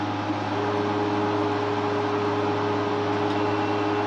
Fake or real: real